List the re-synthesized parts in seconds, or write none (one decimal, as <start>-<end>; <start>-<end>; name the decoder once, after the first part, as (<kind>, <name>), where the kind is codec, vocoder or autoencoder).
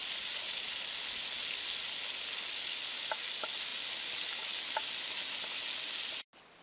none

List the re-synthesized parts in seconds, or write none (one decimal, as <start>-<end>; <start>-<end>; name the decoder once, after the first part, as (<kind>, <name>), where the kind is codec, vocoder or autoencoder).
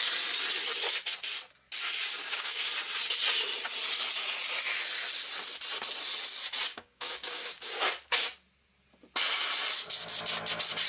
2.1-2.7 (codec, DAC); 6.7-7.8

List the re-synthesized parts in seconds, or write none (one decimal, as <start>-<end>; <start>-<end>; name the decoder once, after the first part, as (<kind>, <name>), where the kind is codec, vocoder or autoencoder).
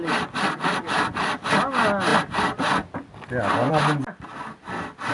none